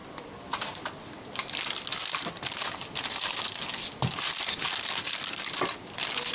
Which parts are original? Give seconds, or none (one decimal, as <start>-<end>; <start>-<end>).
0.0-6.3